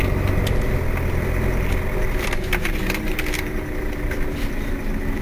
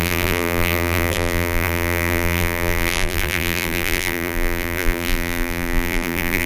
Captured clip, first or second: first